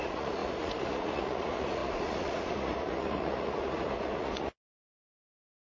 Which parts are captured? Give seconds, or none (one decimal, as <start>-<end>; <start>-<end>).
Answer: none